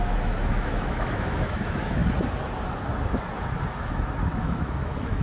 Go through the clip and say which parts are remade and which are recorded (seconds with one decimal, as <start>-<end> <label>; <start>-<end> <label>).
0.0-2.0 remade; 2.0-4.4 recorded; 4.4-5.2 remade